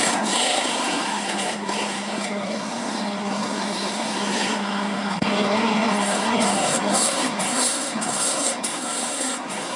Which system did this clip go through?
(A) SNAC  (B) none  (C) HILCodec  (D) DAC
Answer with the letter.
A